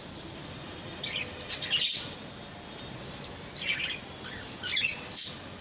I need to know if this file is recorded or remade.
remade